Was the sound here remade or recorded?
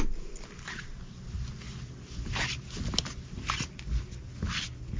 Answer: recorded